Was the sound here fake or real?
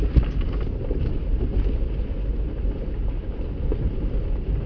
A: real